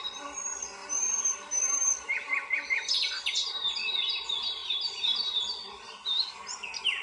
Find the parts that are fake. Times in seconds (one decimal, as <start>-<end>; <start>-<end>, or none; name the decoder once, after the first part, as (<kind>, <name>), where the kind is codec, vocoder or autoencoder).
0.8-3.5 (vocoder, BigVGAN v2); 4.6-5.3